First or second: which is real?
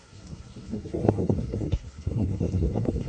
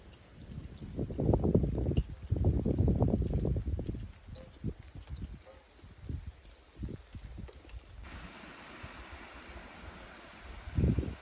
second